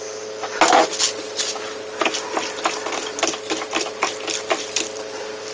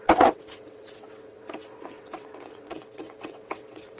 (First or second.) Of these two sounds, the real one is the first